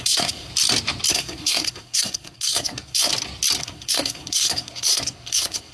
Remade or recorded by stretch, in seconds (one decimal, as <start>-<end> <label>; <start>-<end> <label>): 0.0-0.5 remade; 0.5-1.1 recorded; 1.1-3.1 remade; 3.1-3.6 recorded; 3.6-5.7 remade